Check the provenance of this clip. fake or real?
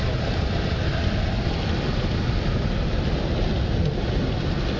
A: real